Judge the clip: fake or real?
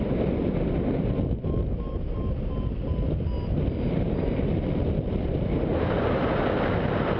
real